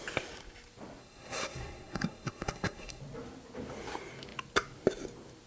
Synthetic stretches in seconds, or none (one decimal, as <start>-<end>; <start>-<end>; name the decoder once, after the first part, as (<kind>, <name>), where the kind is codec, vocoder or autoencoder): 1.0-3.0 (codec, SNAC)

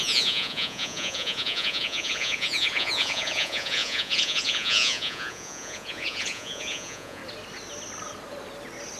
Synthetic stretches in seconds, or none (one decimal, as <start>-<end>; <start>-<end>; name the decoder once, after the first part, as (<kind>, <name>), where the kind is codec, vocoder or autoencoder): 0.0-7.2 (vocoder, Vocos)

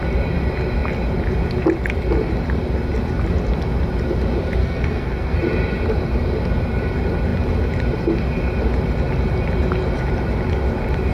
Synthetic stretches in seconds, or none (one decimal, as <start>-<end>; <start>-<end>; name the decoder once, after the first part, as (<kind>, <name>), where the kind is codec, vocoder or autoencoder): 4.6-5.4 (codec, SNAC)

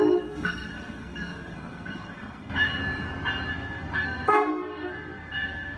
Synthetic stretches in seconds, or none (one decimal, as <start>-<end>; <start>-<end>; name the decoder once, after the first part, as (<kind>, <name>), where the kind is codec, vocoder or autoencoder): 0.0-2.8 (codec, SNAC); 3.5-5.8

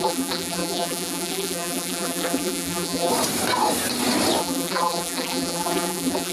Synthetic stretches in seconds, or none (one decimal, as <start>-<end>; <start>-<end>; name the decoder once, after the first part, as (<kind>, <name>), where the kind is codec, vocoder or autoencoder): 0.0-3.1 (vocoder, BigVGAN v2); 4.4-6.3

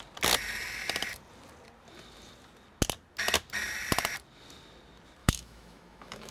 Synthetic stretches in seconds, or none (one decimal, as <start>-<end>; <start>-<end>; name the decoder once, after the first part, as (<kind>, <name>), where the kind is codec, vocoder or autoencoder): 5.2-6.3 (autoencoder, DAC-VAE)

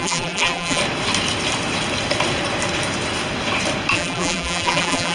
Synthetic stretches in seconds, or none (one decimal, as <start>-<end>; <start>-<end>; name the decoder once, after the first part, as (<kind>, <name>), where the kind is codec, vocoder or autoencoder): 0.0-0.8 (vocoder, BigVGAN v2); 3.9-5.1